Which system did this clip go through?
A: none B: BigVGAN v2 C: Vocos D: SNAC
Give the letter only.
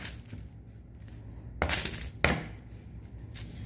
A